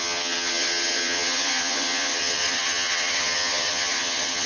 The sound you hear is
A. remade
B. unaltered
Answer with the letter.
A